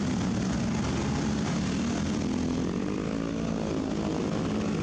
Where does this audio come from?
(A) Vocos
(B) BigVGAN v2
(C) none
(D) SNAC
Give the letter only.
C